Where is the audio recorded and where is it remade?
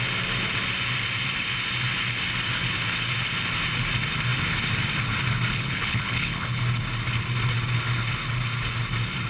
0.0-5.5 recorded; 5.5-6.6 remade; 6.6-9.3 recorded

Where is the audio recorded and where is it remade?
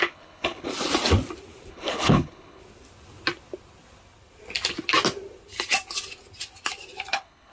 0.0-0.7 remade; 0.7-1.7 recorded; 1.7-2.6 remade; 2.6-7.1 recorded; 7.1-7.5 remade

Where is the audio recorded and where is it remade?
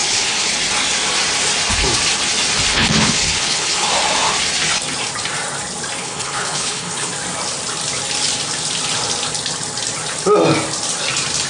0.0-0.5 remade; 0.5-2.7 recorded; 2.7-3.9 remade; 3.9-6.0 recorded; 6.0-7.1 remade; 7.1-11.5 recorded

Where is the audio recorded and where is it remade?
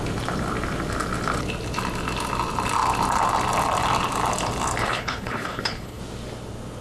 0.0-4.8 recorded; 4.8-6.0 remade; 6.0-6.8 recorded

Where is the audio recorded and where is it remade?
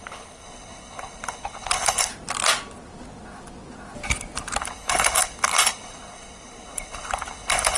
0.0-2.1 remade; 2.1-4.6 recorded; 4.6-7.8 remade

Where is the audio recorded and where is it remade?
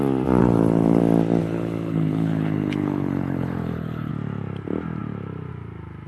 0.0-0.4 recorded; 0.4-1.0 remade; 1.0-1.4 recorded; 1.4-4.1 remade; 4.1-6.1 recorded